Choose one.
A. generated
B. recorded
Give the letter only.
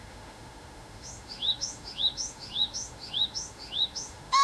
A